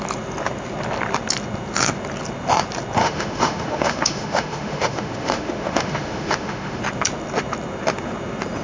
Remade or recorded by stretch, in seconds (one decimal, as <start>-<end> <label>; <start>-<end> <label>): 0.0-3.0 recorded; 3.0-6.8 remade; 6.8-8.6 recorded